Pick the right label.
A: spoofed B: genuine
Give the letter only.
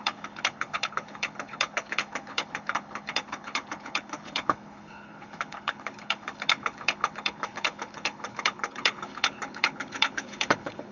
A